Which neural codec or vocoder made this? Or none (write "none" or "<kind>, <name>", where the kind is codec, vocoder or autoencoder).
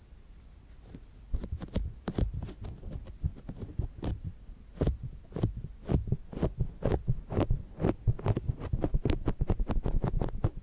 none